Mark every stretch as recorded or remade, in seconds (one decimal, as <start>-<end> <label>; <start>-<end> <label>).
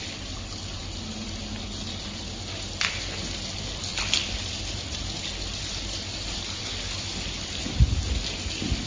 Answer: 0.0-8.9 recorded